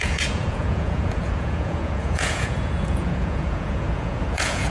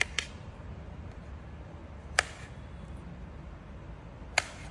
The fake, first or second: first